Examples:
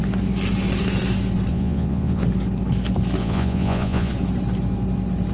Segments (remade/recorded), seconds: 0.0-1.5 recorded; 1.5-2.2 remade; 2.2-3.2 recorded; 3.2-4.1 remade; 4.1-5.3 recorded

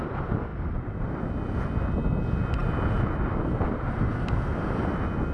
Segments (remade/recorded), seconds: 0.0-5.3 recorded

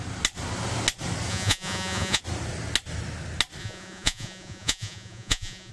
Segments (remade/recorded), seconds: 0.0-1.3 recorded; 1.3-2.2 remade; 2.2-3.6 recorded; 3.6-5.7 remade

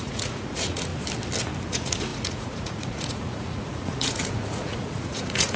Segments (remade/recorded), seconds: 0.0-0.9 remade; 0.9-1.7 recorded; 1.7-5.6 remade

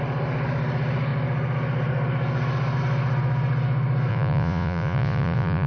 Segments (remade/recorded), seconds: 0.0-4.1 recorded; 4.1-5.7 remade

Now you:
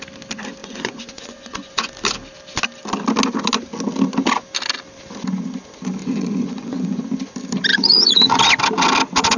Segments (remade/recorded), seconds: 0.0-0.6 recorded; 0.6-1.9 remade; 1.9-6.0 recorded; 6.0-7.0 remade; 7.0-7.7 recorded; 7.7-8.4 remade; 8.4-9.4 recorded

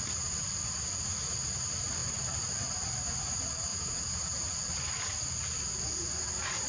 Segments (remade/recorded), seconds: 0.0-3.7 recorded; 3.7-4.4 remade; 4.4-6.7 recorded

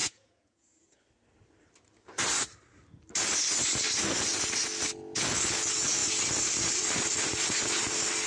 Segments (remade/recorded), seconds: 0.0-1.0 remade; 1.0-8.3 recorded